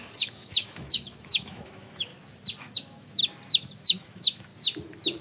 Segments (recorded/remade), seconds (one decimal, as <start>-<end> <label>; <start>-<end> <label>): 0.0-2.1 remade; 2.1-2.6 recorded; 2.6-3.2 remade; 3.2-3.7 recorded; 3.7-4.5 remade; 4.5-5.2 recorded